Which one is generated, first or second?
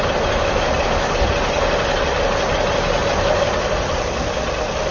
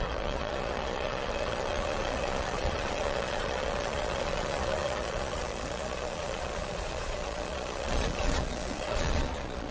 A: second